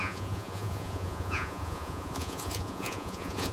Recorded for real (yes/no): no